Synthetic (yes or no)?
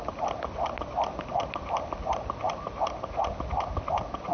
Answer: no